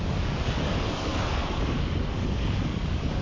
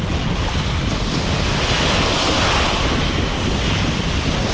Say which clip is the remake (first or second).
first